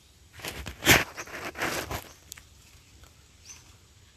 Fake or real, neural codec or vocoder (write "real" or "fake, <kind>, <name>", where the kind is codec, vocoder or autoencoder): real